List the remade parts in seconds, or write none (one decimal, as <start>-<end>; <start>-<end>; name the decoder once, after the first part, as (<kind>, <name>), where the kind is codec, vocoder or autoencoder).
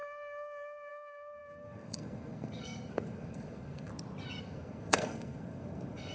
0.0-3.9 (codec, SNAC); 4.4-6.1